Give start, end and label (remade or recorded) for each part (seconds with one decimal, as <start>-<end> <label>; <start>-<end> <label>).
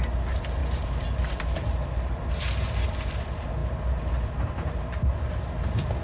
0.0-0.6 recorded; 0.6-3.2 remade; 3.2-6.0 recorded